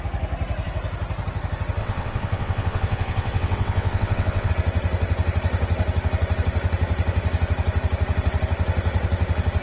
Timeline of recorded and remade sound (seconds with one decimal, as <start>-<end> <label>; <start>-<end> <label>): 0.0-1.8 recorded; 1.8-4.5 remade; 4.5-9.6 recorded